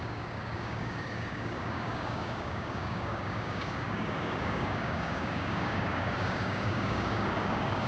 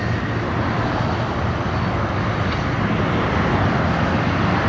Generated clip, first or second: first